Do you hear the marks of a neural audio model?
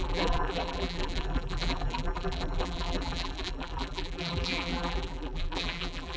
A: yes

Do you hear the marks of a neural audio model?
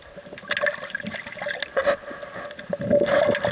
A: no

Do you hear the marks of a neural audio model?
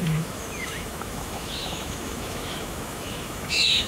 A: yes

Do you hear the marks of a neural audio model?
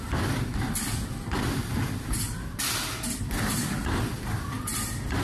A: no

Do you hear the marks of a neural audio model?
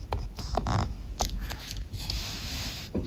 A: yes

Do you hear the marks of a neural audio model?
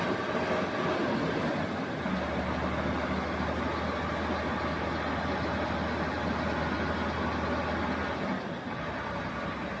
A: no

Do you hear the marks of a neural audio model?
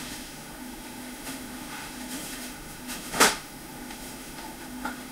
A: yes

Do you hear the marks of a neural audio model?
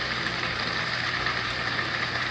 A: yes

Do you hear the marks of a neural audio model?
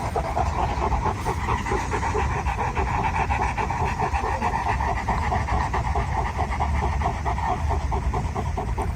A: no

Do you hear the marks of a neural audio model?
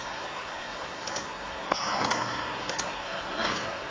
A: yes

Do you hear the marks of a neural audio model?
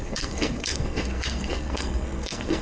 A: yes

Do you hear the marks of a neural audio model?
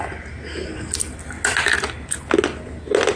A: no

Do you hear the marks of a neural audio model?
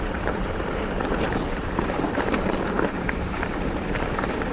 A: yes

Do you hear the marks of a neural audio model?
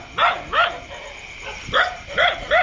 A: no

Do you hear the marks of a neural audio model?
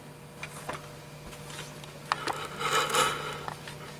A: no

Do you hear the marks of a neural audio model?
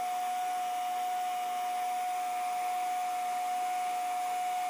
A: no